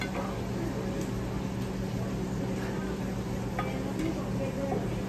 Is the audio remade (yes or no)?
no